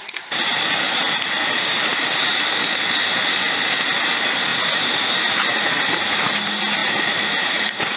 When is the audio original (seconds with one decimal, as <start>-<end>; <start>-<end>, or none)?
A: 0.0-8.0